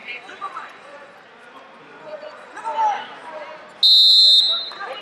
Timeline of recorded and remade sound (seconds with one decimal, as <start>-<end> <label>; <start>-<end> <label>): 0.0-1.2 remade; 1.2-1.9 recorded; 1.9-2.6 remade; 2.6-5.0 recorded